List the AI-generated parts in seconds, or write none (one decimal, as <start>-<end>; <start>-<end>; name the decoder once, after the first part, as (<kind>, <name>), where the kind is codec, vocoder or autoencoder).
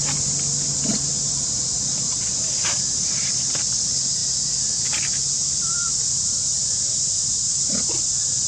4.2-4.9 (vocoder, BigVGAN v2); 5.4-5.9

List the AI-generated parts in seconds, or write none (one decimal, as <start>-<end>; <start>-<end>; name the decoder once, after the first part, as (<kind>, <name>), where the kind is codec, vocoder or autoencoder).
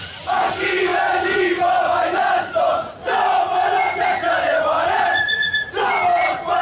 0.0-6.6 (vocoder, Vocos)